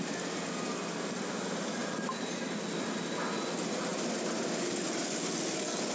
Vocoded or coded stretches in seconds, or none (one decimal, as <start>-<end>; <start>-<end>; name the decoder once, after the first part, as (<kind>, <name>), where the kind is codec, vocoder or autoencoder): none